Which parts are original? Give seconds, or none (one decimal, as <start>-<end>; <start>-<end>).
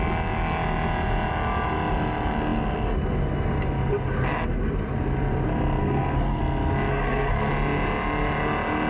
0.0-5.8; 6.4-6.9; 7.5-8.9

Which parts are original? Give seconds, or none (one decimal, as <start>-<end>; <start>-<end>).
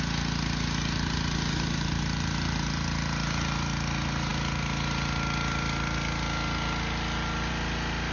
0.0-8.1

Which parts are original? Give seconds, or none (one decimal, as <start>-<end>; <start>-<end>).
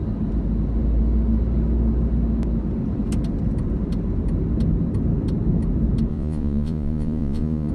0.0-6.1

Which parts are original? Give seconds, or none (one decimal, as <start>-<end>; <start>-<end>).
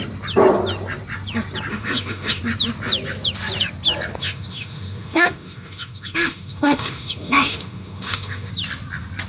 0.0-1.7; 2.4-4.2; 8.5-9.3